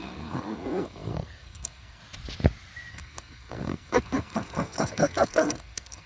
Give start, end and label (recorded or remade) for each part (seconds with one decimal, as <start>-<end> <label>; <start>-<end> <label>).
0.0-2.0 remade; 2.0-2.9 recorded; 2.9-6.1 remade